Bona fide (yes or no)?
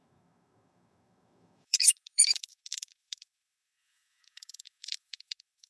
no